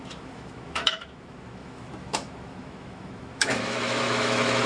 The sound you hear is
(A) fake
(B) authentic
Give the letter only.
A